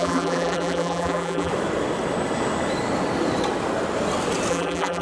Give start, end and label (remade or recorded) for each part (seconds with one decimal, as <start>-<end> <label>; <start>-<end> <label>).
0.0-1.5 remade; 1.5-4.5 recorded; 4.5-5.0 remade

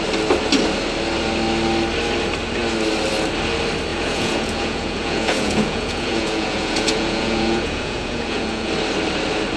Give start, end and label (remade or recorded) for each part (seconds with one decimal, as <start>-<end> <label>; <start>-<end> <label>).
0.0-3.9 recorded; 3.9-8.7 remade; 8.7-9.6 recorded

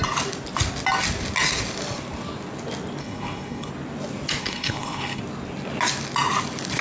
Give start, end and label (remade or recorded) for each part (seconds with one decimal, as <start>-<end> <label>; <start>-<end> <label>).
0.0-3.0 recorded; 3.0-3.7 remade; 3.7-4.4 recorded; 4.4-5.2 remade; 5.2-6.8 recorded

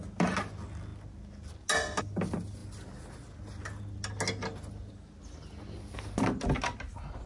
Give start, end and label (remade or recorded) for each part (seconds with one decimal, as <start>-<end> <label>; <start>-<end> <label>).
0.0-7.3 recorded

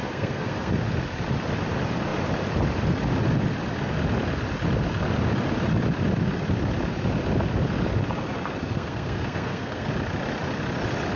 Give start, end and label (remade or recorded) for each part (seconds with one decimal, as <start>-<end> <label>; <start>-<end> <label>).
0.0-0.7 remade; 0.7-8.6 recorded; 8.6-9.9 remade; 9.9-11.2 recorded

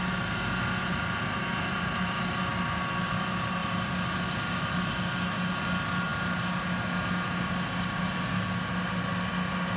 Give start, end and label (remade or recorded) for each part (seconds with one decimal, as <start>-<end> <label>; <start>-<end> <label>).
0.0-9.8 recorded